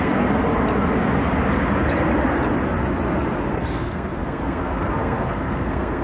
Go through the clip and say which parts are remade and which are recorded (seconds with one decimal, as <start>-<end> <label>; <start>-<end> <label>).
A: 0.0-0.4 remade; 0.4-3.5 recorded; 3.5-6.0 remade